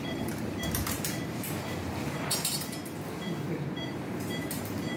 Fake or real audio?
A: fake